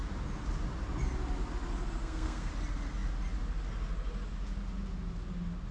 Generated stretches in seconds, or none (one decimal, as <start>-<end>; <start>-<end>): 2.0-2.5